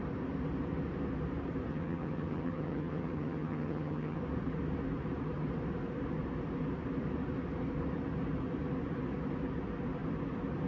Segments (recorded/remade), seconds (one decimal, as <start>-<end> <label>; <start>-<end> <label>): 0.0-1.7 recorded; 1.7-4.2 remade; 4.2-10.7 recorded